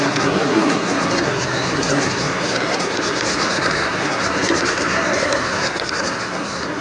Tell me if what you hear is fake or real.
fake